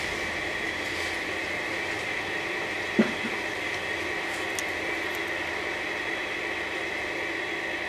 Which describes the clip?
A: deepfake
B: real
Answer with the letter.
B